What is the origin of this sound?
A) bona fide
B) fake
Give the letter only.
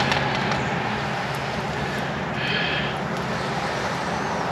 A